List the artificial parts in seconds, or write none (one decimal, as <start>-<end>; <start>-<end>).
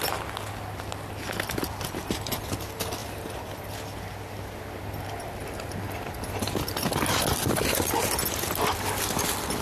none